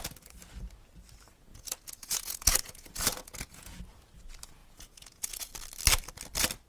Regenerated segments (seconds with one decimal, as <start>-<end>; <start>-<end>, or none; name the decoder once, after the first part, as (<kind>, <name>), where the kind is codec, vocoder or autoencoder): 1.5-3.8 (vocoder, Vocos); 4.6-5.5